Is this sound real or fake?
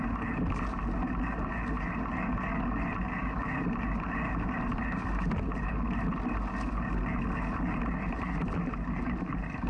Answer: real